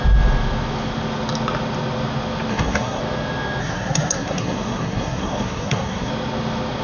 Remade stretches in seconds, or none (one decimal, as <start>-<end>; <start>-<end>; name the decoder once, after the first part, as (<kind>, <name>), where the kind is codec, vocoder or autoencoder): 2.5-3.0 (codec, SNAC); 3.6-6.1